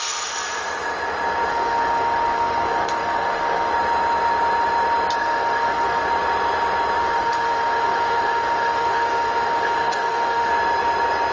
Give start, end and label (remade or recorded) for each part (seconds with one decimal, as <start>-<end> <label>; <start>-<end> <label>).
0.0-1.5 recorded; 1.5-3.7 remade; 3.7-5.2 recorded; 5.2-6.0 remade; 6.0-7.0 recorded; 7.0-10.5 remade; 10.5-11.3 recorded